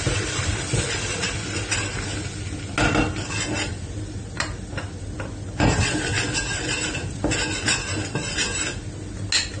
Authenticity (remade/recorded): recorded